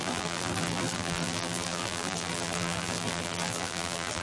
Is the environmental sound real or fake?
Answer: fake